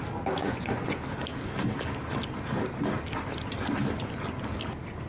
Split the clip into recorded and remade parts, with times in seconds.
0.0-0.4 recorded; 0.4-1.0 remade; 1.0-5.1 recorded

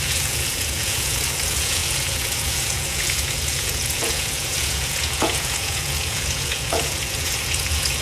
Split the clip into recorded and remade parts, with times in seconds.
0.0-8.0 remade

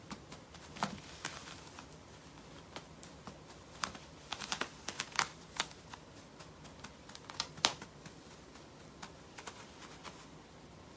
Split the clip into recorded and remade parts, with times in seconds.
0.0-11.0 recorded

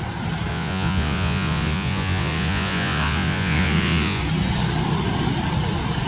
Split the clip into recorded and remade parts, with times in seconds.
0.0-0.5 recorded; 0.5-4.2 remade; 4.2-6.1 recorded

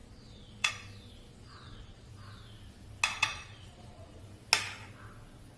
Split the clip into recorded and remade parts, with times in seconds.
0.0-0.7 remade; 0.7-1.3 recorded; 1.3-2.1 remade; 2.1-3.2 recorded; 3.2-4.2 remade; 4.2-5.6 recorded

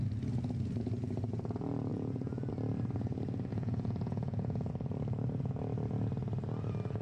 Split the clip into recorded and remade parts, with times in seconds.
0.0-1.9 recorded; 1.9-2.5 remade; 2.5-3.5 recorded; 3.5-4.7 remade; 4.7-7.0 recorded

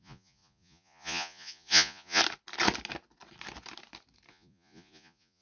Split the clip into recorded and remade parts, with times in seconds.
0.0-2.2 remade; 2.2-4.3 recorded; 4.3-5.4 remade

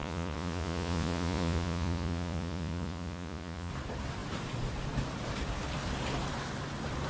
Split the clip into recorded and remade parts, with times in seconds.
0.0-3.7 remade; 3.7-7.1 recorded